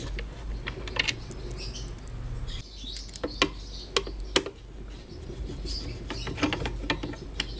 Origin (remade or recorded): recorded